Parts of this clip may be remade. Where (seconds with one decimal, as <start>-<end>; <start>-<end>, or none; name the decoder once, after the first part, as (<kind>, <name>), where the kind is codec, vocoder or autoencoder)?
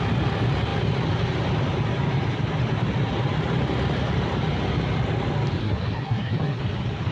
5.6-6.6 (codec, SNAC)